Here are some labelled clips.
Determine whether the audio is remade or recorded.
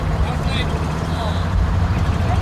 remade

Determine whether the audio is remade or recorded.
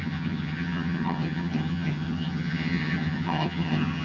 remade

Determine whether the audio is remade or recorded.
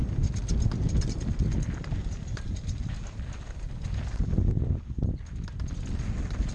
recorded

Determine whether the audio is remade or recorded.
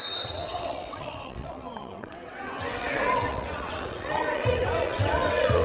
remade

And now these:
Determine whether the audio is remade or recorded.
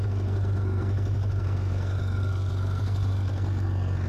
remade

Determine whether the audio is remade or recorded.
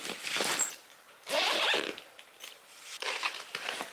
remade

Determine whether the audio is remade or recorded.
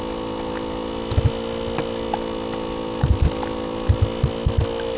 recorded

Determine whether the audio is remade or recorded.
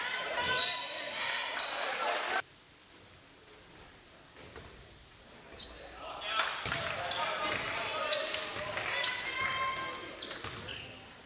recorded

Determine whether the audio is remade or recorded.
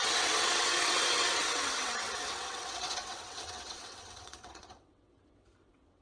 remade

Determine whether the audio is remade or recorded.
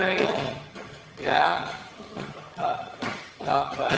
remade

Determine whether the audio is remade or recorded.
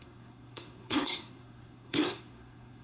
remade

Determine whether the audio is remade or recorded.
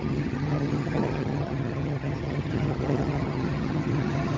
remade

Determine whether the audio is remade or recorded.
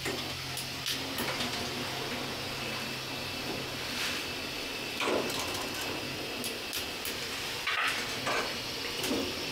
recorded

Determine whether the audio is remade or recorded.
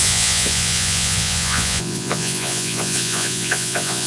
remade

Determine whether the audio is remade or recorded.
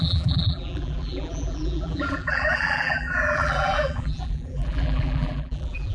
remade